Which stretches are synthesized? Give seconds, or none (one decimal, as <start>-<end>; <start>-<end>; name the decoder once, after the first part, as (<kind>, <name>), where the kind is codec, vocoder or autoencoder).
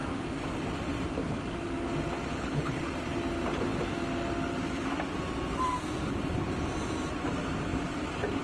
2.3-2.8 (codec, HILCodec)